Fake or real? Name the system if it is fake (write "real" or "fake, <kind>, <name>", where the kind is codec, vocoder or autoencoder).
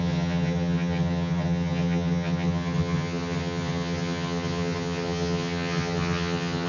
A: fake, vocoder, HiFi-GAN